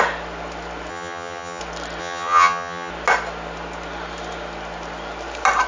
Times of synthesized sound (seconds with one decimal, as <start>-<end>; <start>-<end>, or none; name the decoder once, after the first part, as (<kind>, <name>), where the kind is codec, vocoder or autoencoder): 0.9-1.6 (vocoder, HiFi-GAN); 2.0-2.9